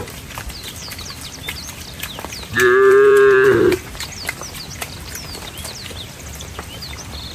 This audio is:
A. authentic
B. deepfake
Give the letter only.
B